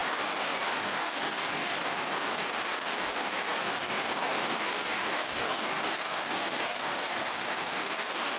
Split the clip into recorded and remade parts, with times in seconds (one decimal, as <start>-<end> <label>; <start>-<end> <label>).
0.0-8.4 remade